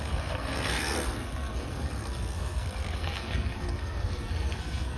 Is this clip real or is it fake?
fake